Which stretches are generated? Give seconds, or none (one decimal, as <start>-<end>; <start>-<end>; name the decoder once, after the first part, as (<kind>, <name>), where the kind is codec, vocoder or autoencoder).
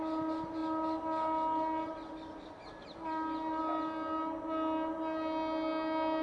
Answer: none